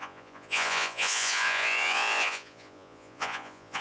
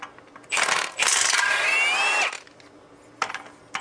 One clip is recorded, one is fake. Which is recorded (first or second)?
second